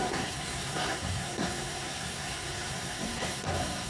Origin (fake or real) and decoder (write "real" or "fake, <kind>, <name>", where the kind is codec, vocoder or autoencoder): fake, codec, SNAC